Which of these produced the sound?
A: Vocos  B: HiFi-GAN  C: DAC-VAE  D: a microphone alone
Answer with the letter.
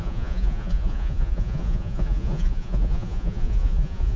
A